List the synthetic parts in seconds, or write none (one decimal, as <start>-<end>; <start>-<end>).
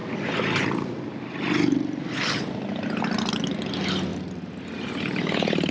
none